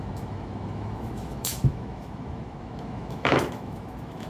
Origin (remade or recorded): remade